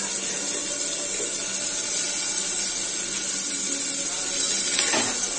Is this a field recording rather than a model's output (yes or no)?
yes